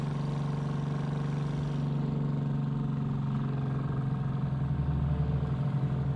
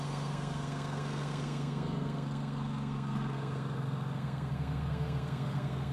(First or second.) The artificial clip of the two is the second